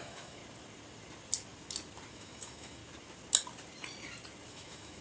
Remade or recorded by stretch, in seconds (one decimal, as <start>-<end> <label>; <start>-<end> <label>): 0.0-0.4 remade; 0.4-2.1 recorded; 2.1-2.8 remade; 2.8-4.5 recorded; 4.5-5.0 remade